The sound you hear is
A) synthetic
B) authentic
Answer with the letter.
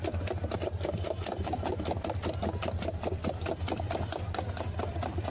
B